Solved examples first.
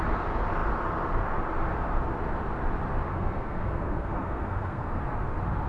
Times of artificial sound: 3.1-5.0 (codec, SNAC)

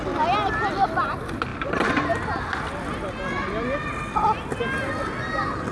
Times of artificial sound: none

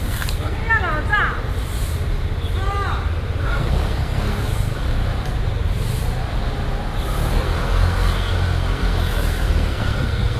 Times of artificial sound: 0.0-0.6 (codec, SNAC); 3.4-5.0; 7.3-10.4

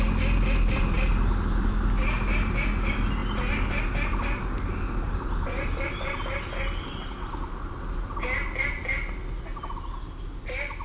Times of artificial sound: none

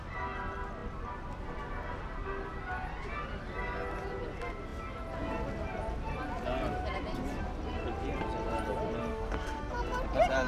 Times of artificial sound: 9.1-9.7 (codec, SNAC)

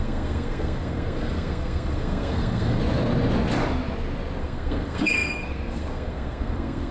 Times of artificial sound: 0.0-2.8 (codec, SNAC); 4.4-6.9

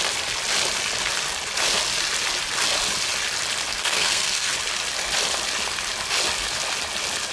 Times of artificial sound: 3.7-4.5 (codec, SNAC)